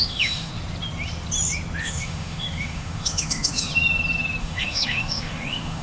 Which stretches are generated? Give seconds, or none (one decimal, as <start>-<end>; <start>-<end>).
0.0-0.5; 1.8-3.7; 4.4-5.8

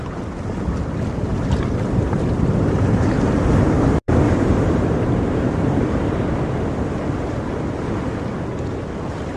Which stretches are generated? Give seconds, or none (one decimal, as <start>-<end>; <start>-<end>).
1.3-6.4